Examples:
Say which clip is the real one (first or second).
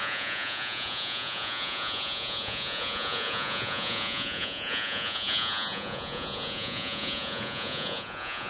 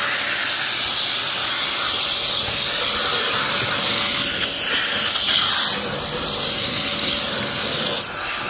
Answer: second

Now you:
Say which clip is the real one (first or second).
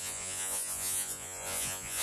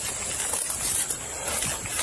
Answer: second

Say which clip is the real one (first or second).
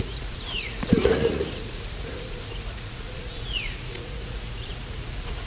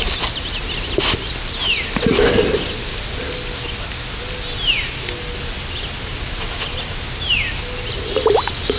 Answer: second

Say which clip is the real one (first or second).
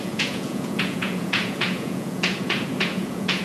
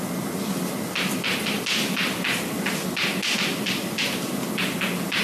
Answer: second